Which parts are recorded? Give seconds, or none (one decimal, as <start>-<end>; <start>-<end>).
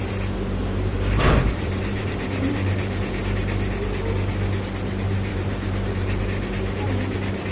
0.0-0.6; 3.4-5.3; 6.2-7.5